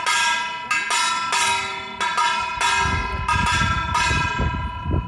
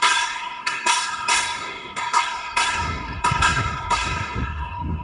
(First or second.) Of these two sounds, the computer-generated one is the second